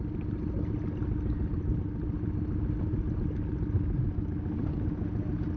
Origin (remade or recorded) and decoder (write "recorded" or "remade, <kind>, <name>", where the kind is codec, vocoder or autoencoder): recorded